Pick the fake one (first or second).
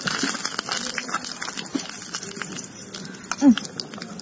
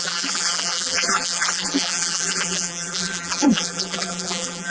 second